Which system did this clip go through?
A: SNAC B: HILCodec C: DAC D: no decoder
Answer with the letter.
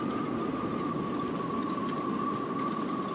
D